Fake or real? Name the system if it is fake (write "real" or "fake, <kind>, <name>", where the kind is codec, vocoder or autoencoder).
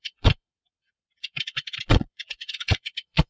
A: fake, vocoder, WaveNeXt